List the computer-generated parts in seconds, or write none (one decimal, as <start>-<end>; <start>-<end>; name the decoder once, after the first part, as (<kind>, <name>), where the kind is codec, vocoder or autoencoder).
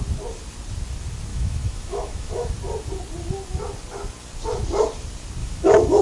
1.3-2.5 (autoencoder, DAC-VAE); 5.4-6.0